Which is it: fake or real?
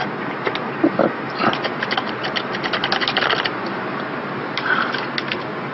real